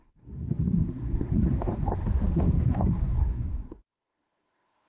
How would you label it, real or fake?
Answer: fake